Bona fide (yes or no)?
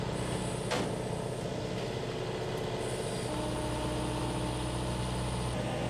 yes